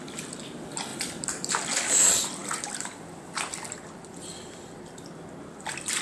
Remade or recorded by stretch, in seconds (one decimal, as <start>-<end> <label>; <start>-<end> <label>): 0.0-0.9 recorded; 0.9-1.5 remade; 1.5-2.4 recorded; 2.4-5.0 remade; 5.0-6.0 recorded